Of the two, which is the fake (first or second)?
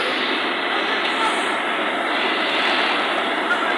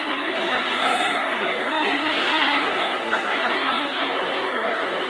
second